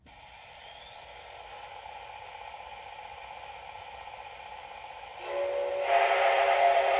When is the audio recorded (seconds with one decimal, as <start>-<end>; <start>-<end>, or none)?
5.1-5.7